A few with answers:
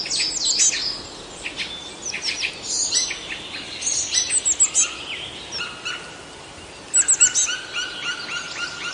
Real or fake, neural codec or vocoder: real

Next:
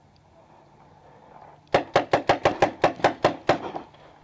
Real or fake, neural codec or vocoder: real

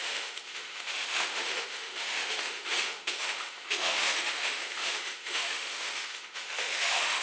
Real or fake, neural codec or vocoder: fake, autoencoder, DAC-VAE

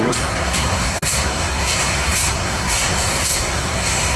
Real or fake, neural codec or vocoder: fake, codec, SNAC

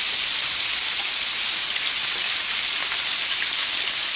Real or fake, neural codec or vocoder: real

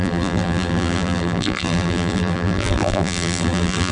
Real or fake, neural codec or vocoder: fake, vocoder, BigVGAN v2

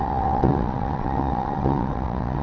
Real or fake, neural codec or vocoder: fake, vocoder, WaveNeXt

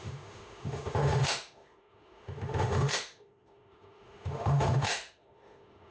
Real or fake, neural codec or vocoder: fake, autoencoder, DAC-VAE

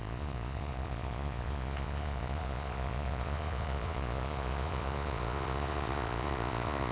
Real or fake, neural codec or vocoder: fake, vocoder, Vocos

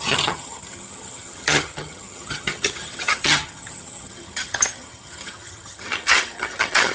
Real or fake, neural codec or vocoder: fake, vocoder, HiFi-GAN